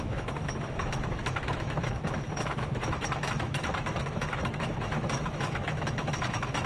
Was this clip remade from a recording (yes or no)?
yes